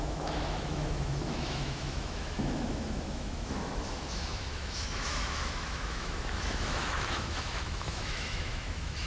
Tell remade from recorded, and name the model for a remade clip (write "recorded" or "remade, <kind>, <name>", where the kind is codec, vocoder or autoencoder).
remade, autoencoder, DAC-VAE